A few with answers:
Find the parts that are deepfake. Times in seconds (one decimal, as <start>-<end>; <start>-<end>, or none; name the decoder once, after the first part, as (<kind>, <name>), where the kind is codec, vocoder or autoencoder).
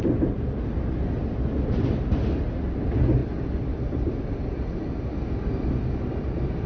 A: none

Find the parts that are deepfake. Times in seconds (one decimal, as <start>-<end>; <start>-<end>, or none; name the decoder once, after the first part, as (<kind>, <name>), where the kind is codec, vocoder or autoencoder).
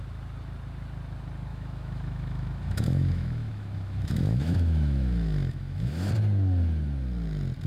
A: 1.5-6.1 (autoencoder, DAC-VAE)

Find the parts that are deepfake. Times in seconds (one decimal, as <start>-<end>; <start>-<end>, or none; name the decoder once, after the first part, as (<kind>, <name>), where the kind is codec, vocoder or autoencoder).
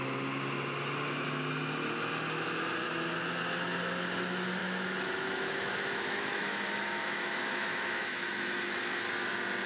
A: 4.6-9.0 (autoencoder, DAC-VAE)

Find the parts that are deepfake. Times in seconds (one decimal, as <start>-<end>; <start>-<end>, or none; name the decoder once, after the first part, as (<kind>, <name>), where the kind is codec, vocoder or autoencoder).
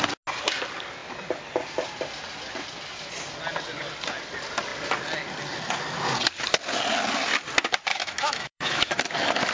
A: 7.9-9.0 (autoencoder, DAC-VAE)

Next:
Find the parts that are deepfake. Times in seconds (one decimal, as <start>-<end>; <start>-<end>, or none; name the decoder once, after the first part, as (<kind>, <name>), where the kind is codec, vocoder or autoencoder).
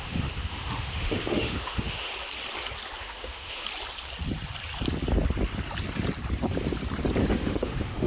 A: 0.0-2.1 (autoencoder, DAC-VAE); 3.0-3.6; 7.3-8.1